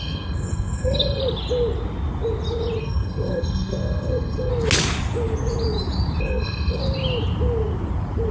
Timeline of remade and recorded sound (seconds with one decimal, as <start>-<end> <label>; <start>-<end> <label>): 0.0-1.2 remade; 1.2-2.8 recorded; 2.8-4.5 remade; 4.5-6.2 recorded; 6.2-6.8 remade; 6.8-8.3 recorded